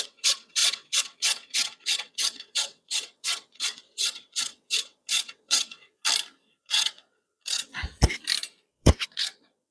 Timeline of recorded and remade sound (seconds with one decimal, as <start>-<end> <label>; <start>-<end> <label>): 0.0-6.0 remade; 6.0-6.6 recorded; 6.6-7.7 remade; 7.7-8.7 recorded; 8.7-9.7 remade